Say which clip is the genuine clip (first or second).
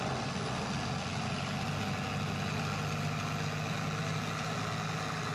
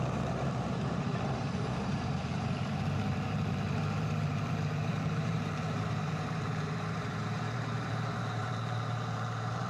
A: first